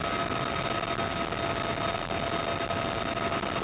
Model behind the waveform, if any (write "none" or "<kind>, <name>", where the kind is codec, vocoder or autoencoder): none